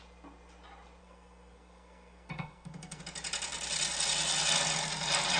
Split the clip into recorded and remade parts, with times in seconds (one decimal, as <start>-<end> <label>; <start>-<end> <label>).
0.0-1.0 recorded; 1.0-3.0 remade; 3.0-5.4 recorded